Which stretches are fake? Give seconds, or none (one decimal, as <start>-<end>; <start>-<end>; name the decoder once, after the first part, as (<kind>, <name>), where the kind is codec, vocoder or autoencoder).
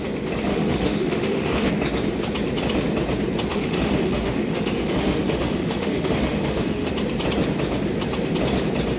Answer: 0.5-1.7 (autoencoder, DAC-VAE); 3.5-6.9